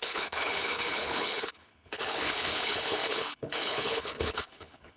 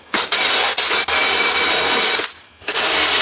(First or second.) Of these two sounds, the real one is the second